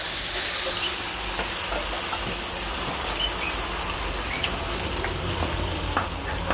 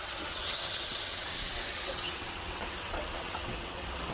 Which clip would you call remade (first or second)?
second